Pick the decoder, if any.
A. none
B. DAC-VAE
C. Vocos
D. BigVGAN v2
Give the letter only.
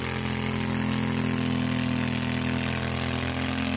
A